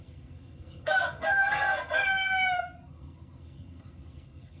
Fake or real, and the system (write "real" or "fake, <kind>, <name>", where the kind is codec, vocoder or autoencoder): fake, codec, SNAC